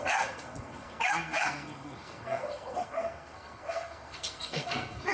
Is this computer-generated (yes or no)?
yes